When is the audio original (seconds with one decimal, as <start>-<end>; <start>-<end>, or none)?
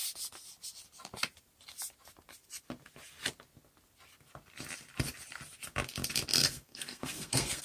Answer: 0.0-6.4